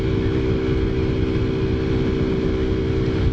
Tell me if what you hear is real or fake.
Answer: real